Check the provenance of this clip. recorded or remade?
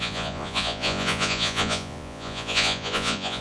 remade